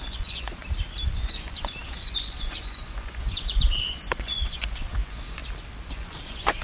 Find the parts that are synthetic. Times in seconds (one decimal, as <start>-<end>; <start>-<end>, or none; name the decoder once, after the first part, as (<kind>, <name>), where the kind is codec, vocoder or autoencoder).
0.0-0.6 (vocoder, Vocos); 1.1-5.4; 5.9-6.6